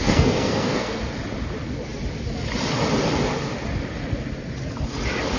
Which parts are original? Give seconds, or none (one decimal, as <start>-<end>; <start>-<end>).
1.0-5.4